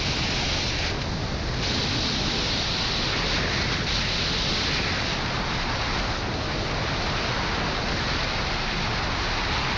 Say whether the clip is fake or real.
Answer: real